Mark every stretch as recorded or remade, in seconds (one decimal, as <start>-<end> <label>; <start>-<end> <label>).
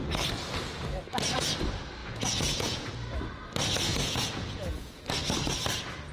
0.0-2.0 recorded; 2.0-2.9 remade; 2.9-3.9 recorded; 3.9-5.0 remade; 5.0-6.1 recorded